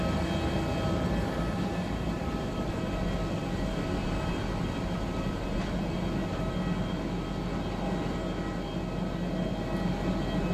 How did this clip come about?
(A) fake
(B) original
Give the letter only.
B